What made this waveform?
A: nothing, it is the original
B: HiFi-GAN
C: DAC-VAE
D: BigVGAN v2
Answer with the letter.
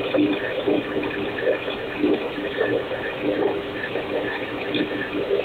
C